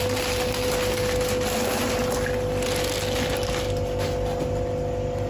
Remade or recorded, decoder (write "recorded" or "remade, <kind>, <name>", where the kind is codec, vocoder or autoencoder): recorded